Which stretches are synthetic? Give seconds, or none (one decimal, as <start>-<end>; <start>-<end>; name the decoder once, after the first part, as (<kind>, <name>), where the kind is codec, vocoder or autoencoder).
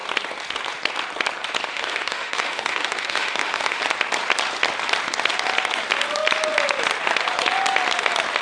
1.7-3.8 (autoencoder, DAC-VAE)